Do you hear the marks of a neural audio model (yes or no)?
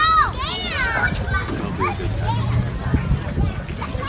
no